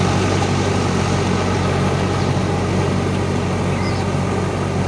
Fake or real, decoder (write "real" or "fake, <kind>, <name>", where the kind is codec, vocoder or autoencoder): real